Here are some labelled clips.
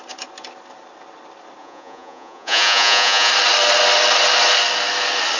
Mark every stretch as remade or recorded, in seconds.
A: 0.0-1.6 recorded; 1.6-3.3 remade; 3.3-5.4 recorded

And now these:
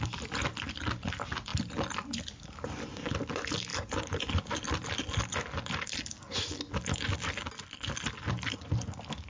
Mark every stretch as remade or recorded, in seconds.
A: 0.0-9.3 recorded

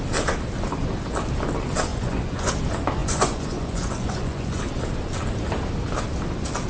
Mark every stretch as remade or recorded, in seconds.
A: 0.0-1.9 recorded; 1.9-2.5 remade; 2.5-3.0 recorded; 3.0-4.6 remade; 4.6-6.7 recorded

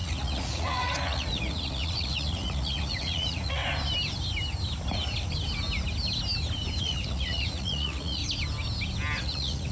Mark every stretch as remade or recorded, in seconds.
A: 0.0-3.6 remade; 3.6-6.8 recorded; 6.8-8.2 remade; 8.2-9.2 recorded; 9.2-9.7 remade

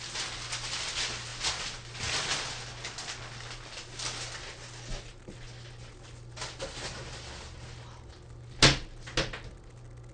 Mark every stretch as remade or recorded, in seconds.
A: 0.0-10.1 recorded

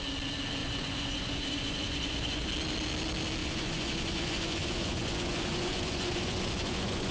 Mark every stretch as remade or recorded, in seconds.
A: 0.0-0.6 recorded; 0.6-2.5 remade; 2.5-3.4 recorded; 3.4-7.1 remade

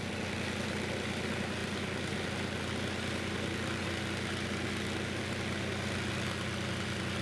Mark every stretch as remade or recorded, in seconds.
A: 0.0-7.2 recorded